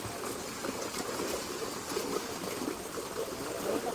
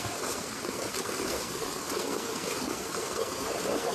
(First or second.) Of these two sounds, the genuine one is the first